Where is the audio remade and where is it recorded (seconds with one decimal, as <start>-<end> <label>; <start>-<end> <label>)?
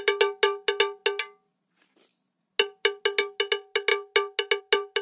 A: 0.0-5.0 recorded